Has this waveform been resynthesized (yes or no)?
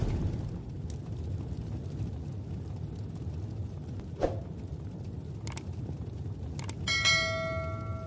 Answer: no